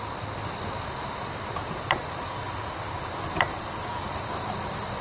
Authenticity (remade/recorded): recorded